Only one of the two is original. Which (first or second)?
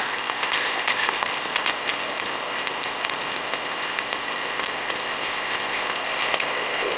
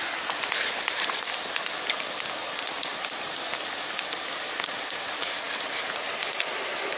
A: second